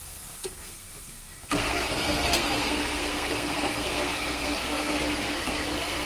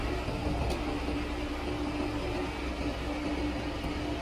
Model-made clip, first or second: first